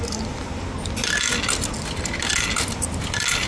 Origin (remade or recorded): recorded